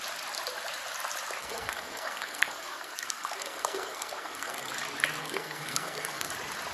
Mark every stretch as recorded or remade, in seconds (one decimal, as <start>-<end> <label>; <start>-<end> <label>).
0.0-1.4 recorded; 1.4-4.7 remade; 4.7-5.2 recorded; 5.2-6.3 remade; 6.3-6.7 recorded